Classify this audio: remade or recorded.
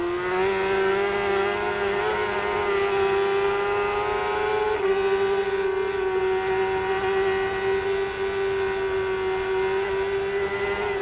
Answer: recorded